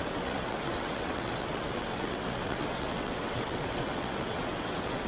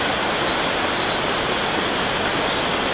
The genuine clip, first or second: second